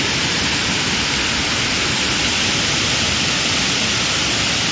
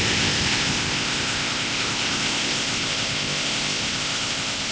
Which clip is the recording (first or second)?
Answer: first